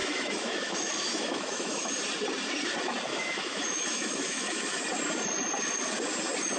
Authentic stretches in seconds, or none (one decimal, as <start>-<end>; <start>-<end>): 1.9-3.1; 4.8-6.6